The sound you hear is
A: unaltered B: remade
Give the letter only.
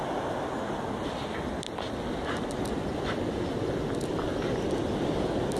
A